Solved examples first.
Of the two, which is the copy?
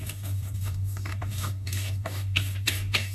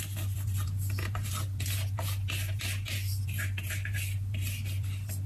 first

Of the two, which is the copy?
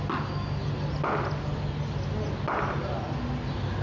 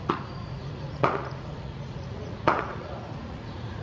second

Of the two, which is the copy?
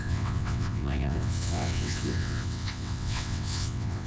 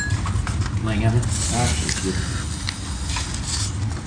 first